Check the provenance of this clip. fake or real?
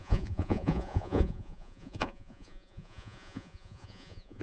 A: fake